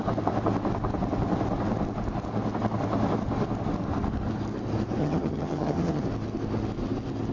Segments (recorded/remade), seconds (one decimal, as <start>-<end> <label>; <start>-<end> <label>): 0.0-5.0 recorded; 5.0-6.0 remade; 6.0-7.3 recorded